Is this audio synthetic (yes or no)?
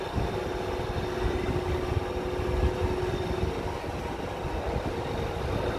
no